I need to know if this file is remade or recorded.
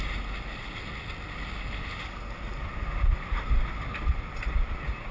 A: recorded